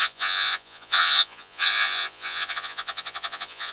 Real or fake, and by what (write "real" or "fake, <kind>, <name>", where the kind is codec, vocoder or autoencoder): fake, vocoder, Vocos